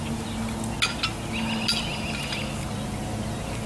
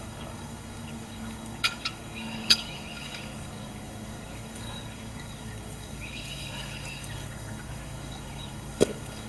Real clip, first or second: first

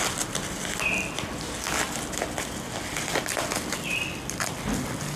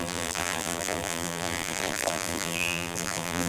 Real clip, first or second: first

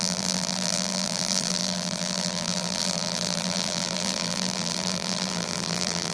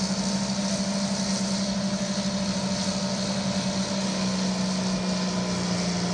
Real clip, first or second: second